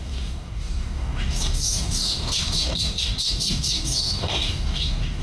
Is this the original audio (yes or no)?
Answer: no